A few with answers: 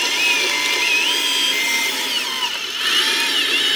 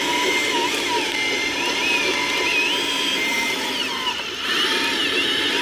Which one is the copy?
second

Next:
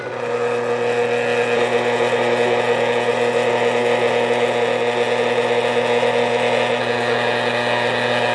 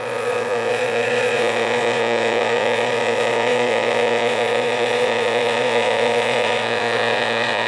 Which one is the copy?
second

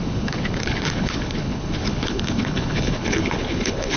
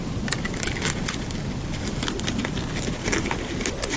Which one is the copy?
first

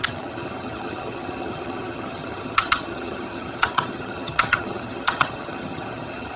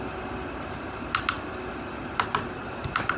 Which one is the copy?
first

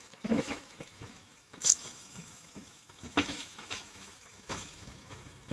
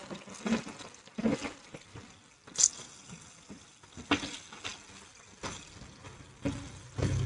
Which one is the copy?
first